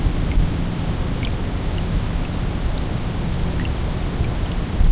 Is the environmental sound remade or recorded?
recorded